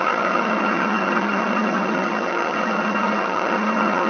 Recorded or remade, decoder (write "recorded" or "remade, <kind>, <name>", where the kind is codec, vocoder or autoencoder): remade, vocoder, HiFi-GAN